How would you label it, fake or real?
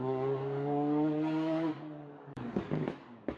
fake